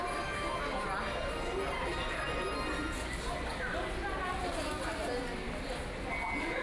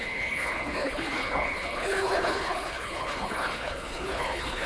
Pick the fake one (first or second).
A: second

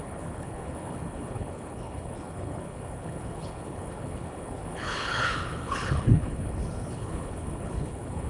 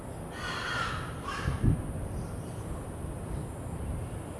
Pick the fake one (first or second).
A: first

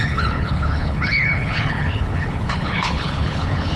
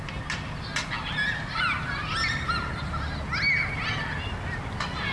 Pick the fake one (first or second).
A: first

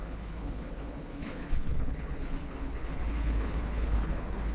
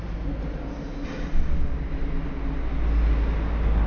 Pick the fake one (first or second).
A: first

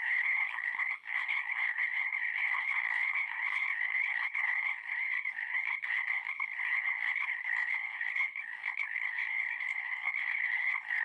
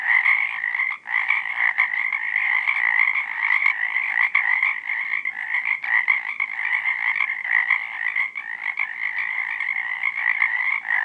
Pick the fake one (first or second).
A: first